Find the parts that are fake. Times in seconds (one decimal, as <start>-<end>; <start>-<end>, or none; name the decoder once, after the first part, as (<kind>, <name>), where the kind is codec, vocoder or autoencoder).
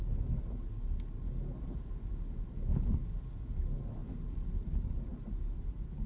1.5-2.4 (vocoder, BigVGAN v2); 4.0-4.6; 5.1-6.1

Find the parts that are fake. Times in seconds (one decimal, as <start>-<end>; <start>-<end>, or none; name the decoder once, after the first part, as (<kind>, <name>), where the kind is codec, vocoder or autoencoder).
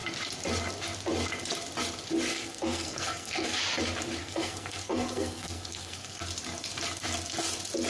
2.3-3.6 (codec, SNAC); 4.2-6.2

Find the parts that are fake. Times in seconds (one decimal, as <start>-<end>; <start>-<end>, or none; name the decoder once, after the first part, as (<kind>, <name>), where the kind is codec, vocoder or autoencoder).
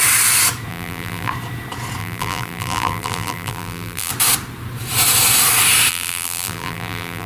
0.7-1.3 (vocoder, BigVGAN v2); 2.0-4.1; 5.9-7.3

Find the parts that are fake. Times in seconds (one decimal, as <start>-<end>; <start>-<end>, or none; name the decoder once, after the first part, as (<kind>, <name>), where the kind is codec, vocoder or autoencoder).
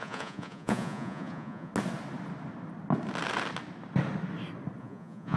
0.0-1.7 (vocoder, Vocos); 4.8-5.4